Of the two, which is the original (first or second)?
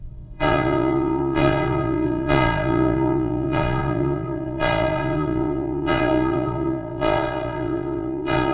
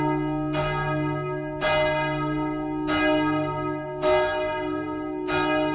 second